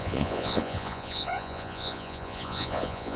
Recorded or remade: remade